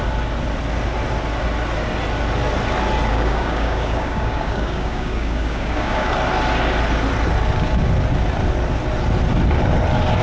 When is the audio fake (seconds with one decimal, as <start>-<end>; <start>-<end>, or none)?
3.1-6.1